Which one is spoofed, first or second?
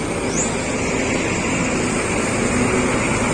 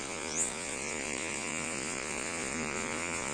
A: second